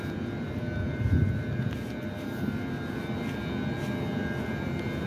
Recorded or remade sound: recorded